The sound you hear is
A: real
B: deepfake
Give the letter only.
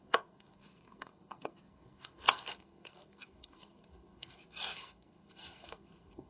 B